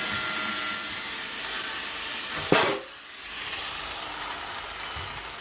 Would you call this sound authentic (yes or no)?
yes